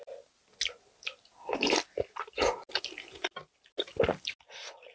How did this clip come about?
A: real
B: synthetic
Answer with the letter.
A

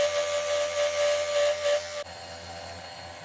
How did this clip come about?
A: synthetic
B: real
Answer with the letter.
B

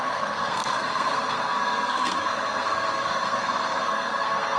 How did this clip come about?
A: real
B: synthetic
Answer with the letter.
B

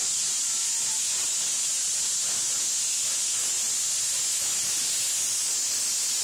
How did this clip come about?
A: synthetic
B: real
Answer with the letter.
B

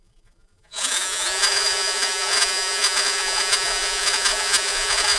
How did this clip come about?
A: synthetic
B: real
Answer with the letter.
A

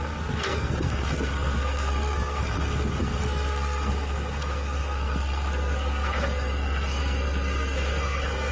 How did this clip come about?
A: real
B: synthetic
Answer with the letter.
B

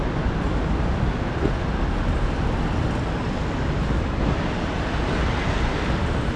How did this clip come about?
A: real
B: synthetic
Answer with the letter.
A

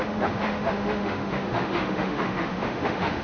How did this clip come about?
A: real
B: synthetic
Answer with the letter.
B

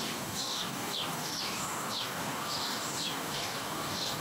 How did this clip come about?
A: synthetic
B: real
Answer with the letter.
A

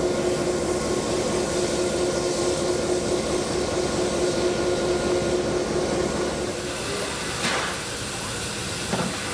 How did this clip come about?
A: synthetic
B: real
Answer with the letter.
B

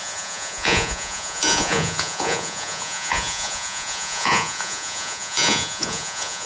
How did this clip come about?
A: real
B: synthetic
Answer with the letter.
B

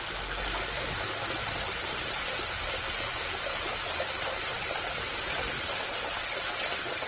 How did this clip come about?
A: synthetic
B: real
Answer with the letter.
B